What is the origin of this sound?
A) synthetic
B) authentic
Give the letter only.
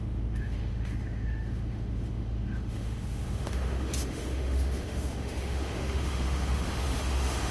A